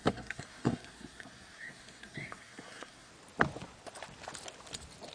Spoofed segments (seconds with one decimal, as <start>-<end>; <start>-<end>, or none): 0.0-3.1